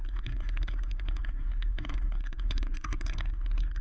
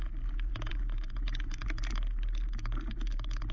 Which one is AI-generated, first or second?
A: first